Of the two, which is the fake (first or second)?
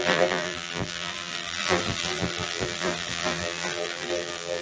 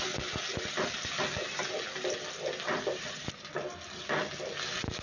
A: first